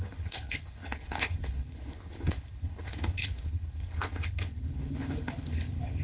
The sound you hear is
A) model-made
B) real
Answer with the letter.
A